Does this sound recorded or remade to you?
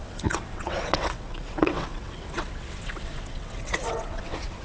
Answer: remade